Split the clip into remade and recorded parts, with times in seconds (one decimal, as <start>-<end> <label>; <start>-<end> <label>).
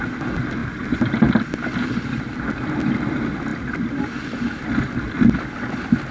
0.0-0.6 recorded; 0.6-1.4 remade; 1.4-3.5 recorded; 3.5-4.1 remade; 4.1-6.1 recorded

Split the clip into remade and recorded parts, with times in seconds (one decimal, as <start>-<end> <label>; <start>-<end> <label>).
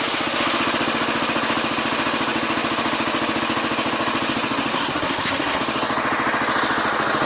0.0-4.7 recorded; 4.7-5.6 remade; 5.6-7.3 recorded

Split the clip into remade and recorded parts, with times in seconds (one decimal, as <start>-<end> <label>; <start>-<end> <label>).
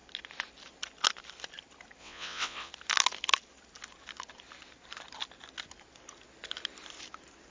0.0-2.0 recorded; 2.0-2.7 remade; 2.7-7.5 recorded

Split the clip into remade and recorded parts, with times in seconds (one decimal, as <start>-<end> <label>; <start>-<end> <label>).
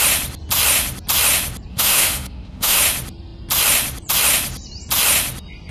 0.0-1.7 recorded; 1.7-2.8 remade; 2.8-5.7 recorded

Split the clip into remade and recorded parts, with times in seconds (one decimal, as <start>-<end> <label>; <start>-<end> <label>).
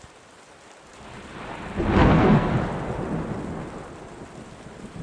0.0-2.0 recorded; 2.0-2.5 remade; 2.5-5.0 recorded